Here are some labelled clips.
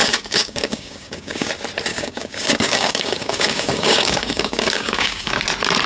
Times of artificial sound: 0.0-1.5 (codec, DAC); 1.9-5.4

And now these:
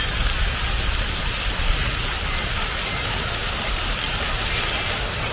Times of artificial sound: none

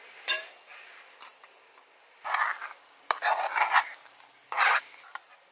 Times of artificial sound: none

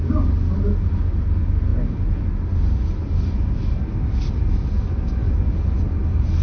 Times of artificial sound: none